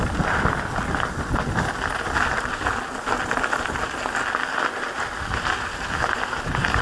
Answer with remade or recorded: recorded